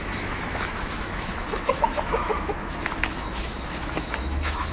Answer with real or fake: fake